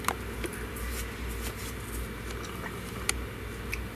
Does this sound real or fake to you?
real